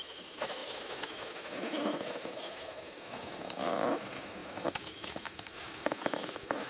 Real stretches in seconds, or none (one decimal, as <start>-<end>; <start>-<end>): none